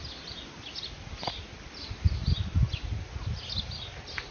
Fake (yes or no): no